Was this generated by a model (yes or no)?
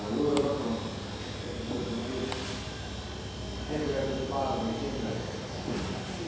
no